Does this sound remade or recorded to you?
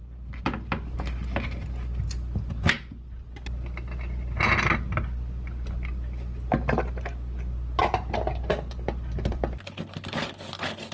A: recorded